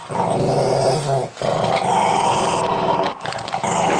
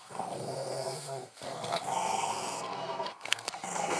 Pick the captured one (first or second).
first